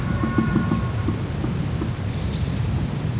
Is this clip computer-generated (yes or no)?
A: no